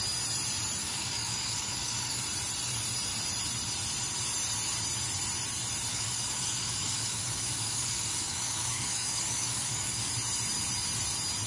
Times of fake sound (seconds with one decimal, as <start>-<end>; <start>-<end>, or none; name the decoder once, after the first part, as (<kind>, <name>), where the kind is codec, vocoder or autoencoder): 0.8-2.2 (codec, DAC); 5.9-10.1